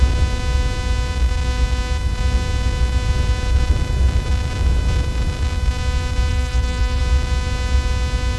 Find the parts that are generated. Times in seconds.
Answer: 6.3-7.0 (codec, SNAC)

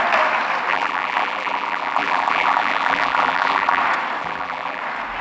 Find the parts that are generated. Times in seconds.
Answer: 0.7-3.8 (vocoder, BigVGAN v2); 4.2-4.8

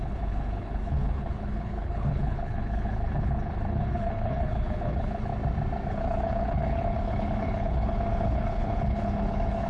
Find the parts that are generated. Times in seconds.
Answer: 0.0-5.3 (codec, HILCodec); 5.9-9.7

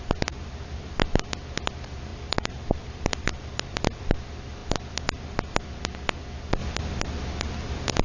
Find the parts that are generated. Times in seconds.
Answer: 2.1-3.3 (vocoder, BigVGAN v2)